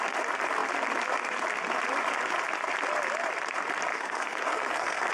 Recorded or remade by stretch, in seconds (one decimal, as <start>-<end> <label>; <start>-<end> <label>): 0.0-3.9 recorded; 3.9-5.1 remade